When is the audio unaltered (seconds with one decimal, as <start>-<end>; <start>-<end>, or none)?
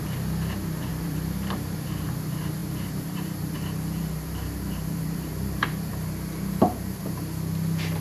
0.0-0.9; 2.1-2.6; 5.9-8.0